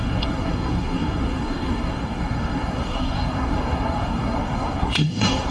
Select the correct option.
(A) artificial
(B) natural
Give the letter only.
A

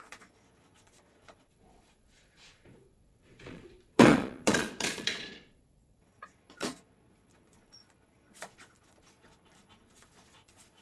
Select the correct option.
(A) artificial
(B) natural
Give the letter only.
A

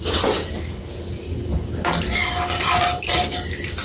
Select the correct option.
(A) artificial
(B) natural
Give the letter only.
B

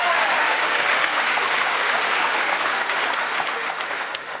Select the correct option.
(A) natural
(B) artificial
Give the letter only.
B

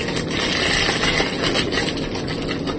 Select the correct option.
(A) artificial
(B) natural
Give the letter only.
B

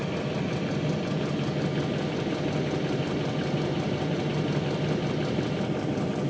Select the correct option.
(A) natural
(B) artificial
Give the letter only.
A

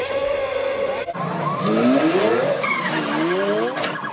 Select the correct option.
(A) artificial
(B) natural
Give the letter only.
B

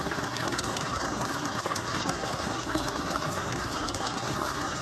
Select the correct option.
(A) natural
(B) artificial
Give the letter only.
B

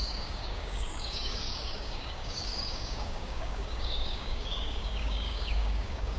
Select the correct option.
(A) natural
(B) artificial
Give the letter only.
B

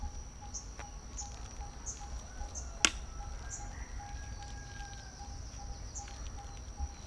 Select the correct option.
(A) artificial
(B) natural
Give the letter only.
B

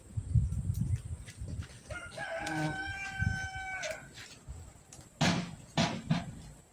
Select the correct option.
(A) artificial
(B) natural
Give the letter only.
B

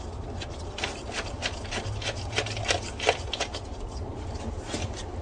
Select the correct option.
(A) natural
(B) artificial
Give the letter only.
A